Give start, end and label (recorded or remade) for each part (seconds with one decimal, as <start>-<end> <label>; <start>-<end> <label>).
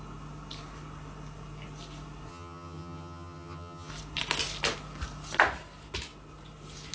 0.0-2.3 recorded; 2.3-3.9 remade; 3.9-6.9 recorded